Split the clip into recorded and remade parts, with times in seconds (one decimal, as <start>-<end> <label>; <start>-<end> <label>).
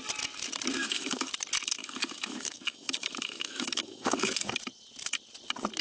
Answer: 0.0-0.8 recorded; 0.8-1.3 remade; 1.3-1.8 recorded; 1.8-4.4 remade; 4.4-5.8 recorded